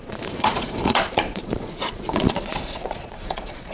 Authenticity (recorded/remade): remade